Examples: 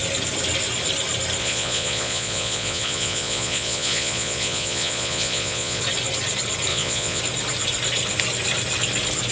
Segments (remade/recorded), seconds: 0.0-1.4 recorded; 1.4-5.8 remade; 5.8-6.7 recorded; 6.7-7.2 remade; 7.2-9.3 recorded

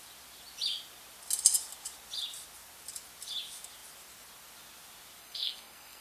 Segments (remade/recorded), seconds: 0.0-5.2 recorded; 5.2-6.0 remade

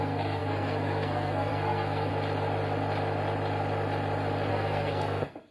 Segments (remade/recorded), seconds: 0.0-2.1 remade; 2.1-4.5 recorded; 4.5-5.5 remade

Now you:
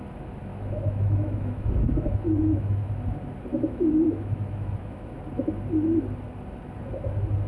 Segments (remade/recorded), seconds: 0.0-0.5 recorded; 0.5-2.9 remade; 2.9-3.5 recorded; 3.5-5.2 remade; 5.2-7.5 recorded

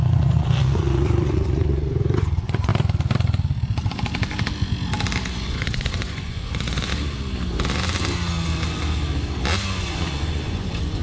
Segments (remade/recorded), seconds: 0.0-2.7 remade; 2.7-5.4 recorded; 5.4-6.9 remade; 6.9-9.8 recorded; 9.8-11.0 remade

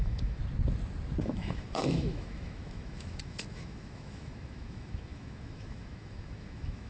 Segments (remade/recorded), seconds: 0.0-0.4 remade; 0.4-1.2 recorded; 1.2-6.9 remade

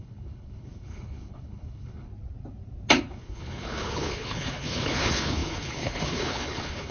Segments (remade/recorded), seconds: 0.0-2.1 remade; 2.1-3.1 recorded; 3.1-6.9 remade

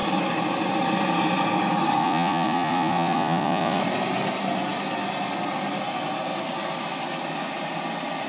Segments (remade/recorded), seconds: 0.0-2.0 recorded; 2.0-3.8 remade; 3.8-8.3 recorded